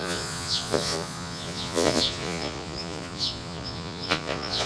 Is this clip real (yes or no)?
no